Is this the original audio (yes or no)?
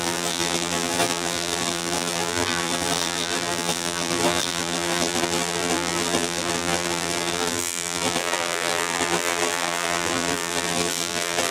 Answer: no